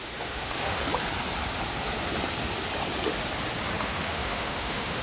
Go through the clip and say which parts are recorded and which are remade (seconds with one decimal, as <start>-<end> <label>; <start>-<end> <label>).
0.0-0.8 remade; 0.8-3.8 recorded; 3.8-5.0 remade